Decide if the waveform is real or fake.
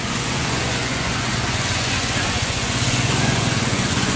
fake